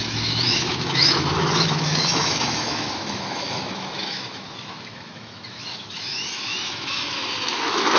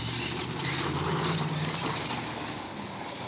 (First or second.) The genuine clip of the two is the second